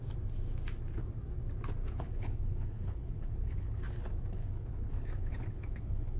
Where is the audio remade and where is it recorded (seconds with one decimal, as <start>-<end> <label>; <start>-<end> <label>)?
0.0-1.8 recorded; 1.8-3.8 remade; 3.8-4.4 recorded; 4.4-6.2 remade